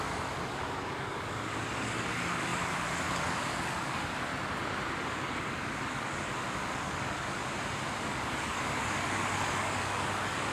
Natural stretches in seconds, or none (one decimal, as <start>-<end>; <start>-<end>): 4.3-5.0; 7.4-8.0